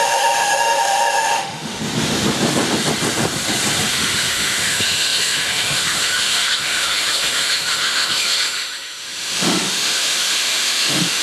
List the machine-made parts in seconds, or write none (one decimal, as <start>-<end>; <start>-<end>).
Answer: 0.0-1.8; 3.9-11.2